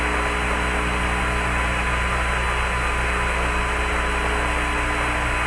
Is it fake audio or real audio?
real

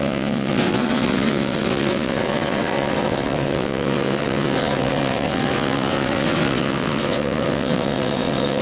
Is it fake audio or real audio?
fake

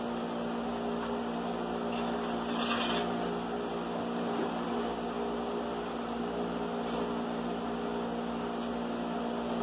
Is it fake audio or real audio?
real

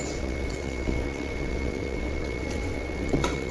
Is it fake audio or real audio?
fake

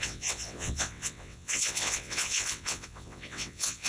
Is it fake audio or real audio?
fake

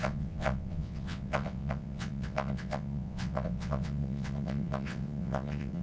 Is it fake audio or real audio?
fake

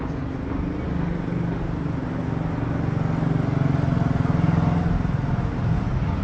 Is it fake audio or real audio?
real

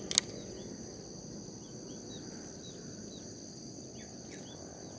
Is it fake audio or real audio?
real